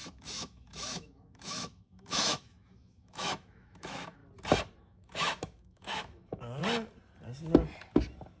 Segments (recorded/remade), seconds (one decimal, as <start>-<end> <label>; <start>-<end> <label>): 0.0-4.2 remade; 4.2-4.8 recorded; 4.8-6.6 remade; 6.6-8.4 recorded